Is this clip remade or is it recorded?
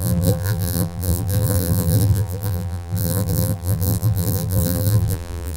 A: remade